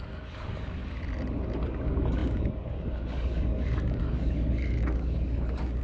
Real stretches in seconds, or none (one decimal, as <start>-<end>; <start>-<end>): 0.8-1.6

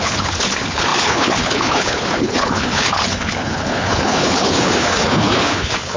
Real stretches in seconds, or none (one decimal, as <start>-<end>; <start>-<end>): none